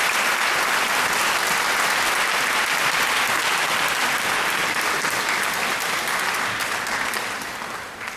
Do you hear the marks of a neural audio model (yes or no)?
no